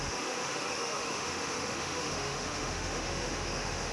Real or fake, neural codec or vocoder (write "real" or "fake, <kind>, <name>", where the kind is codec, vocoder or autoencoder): fake, autoencoder, DAC-VAE